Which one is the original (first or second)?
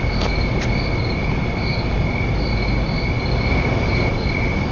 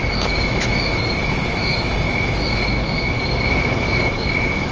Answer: first